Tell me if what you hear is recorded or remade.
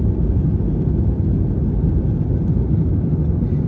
recorded